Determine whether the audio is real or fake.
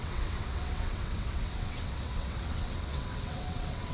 fake